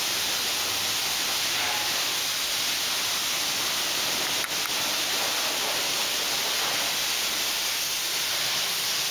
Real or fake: real